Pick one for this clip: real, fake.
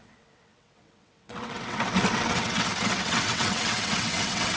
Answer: fake